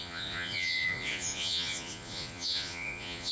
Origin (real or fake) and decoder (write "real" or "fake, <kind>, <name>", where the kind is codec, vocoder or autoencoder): fake, vocoder, Vocos